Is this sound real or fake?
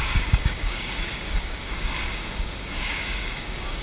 fake